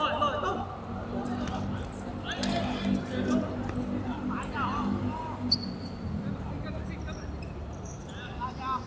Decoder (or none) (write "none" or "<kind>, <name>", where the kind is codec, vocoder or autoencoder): none